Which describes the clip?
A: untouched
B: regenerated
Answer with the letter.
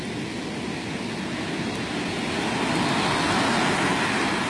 A